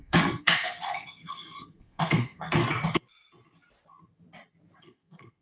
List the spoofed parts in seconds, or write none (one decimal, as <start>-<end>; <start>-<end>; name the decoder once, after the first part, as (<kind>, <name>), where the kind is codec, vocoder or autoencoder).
0.0-2.6 (codec, SNAC); 4.8-5.4